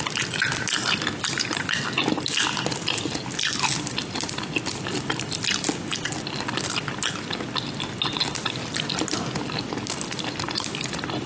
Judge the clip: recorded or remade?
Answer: recorded